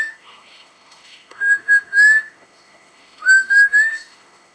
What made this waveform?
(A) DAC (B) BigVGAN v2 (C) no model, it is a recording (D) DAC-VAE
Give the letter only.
D